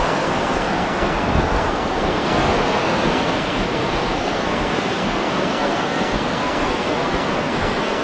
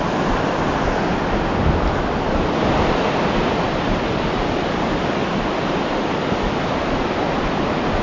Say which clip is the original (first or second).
second